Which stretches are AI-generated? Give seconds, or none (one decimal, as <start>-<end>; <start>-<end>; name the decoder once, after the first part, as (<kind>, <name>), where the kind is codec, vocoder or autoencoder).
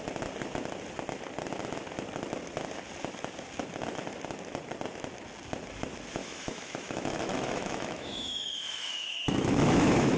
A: 6.2-10.2 (autoencoder, DAC-VAE)